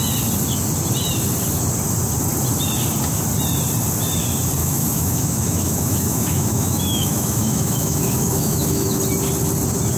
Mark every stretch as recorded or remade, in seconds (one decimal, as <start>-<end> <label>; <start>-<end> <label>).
0.0-4.6 recorded; 4.6-9.0 remade; 9.0-10.0 recorded